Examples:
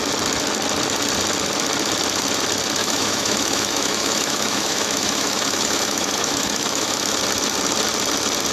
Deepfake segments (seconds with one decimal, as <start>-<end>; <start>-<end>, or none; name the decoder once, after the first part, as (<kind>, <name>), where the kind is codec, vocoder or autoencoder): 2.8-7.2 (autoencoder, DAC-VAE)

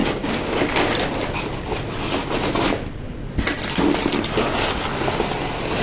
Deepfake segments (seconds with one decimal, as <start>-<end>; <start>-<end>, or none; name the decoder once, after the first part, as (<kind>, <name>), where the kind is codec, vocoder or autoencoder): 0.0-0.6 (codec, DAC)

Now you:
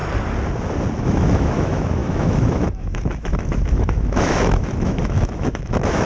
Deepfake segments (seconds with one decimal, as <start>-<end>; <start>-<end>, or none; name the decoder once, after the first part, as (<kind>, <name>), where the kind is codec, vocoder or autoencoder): 1.0-6.1 (autoencoder, DAC-VAE)